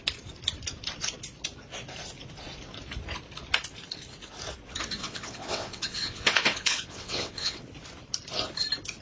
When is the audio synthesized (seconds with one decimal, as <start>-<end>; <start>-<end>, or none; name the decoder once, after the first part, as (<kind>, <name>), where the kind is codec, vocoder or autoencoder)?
5.0-7.6 (vocoder, WaveNeXt)